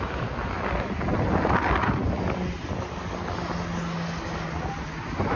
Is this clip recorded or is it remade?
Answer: recorded